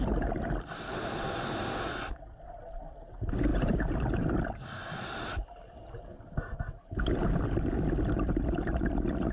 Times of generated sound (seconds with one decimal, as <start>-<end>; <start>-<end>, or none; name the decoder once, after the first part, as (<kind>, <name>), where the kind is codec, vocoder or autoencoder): 0.0-9.3 (vocoder, BigVGAN v2)